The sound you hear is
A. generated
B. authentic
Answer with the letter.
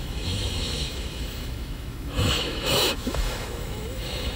A